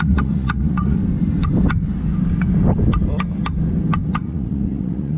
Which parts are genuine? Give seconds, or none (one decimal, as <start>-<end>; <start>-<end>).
1.0-4.1